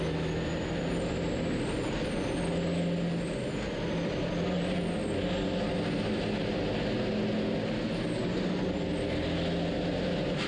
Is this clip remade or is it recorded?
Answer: recorded